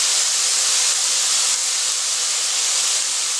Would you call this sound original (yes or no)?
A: yes